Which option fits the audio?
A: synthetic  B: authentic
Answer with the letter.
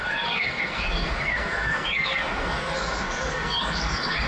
A